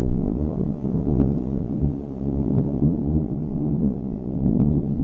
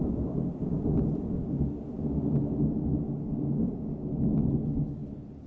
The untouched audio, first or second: second